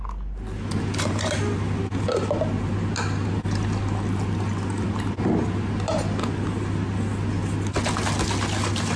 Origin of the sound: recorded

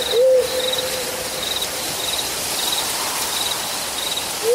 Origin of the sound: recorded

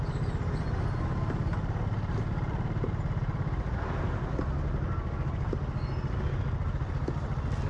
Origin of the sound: recorded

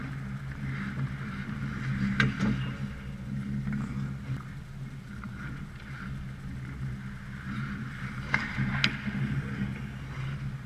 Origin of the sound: recorded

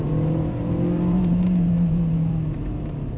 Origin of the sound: remade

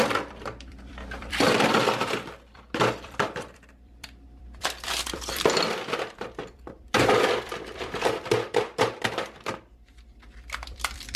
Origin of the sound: remade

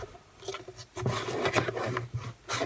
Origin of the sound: recorded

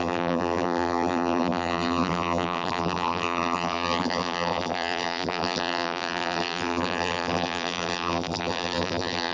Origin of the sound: remade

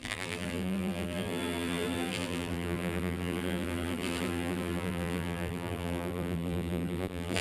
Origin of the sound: remade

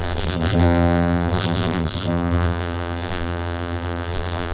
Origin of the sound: remade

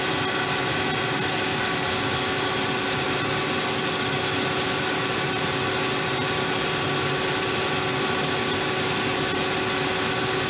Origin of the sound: recorded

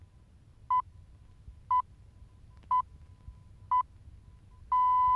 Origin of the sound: recorded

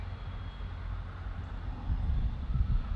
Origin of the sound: recorded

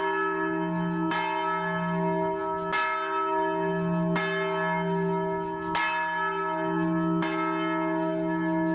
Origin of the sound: recorded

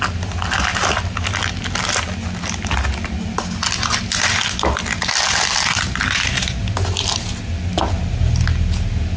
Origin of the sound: recorded